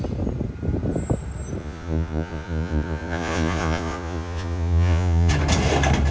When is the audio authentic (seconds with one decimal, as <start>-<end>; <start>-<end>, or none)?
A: 0.0-1.6; 5.3-6.1